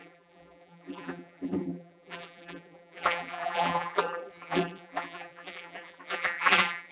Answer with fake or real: fake